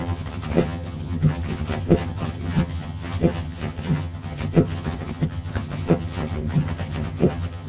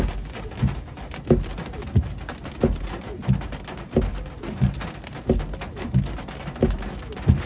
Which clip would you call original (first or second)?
second